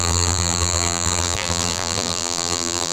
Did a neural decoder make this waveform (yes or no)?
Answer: yes